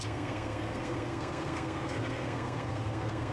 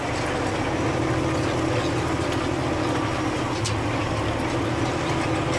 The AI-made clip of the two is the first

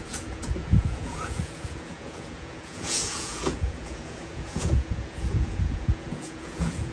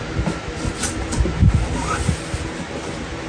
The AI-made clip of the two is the first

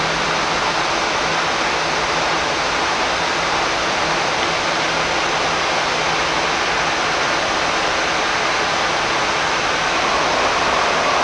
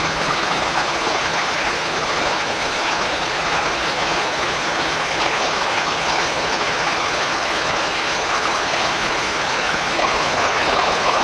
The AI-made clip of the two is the second